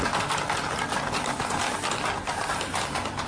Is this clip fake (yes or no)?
no